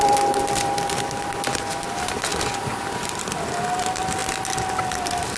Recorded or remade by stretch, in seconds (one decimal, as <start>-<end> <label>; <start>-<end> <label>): 0.0-2.3 remade; 2.3-3.1 recorded; 3.1-4.2 remade; 4.2-4.8 recorded; 4.8-5.4 remade